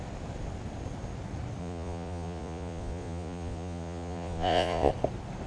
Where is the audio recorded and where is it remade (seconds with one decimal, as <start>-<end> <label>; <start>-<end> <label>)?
0.0-1.6 recorded; 1.6-4.9 remade; 4.9-5.5 recorded